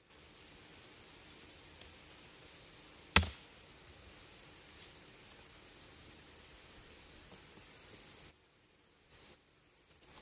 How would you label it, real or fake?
real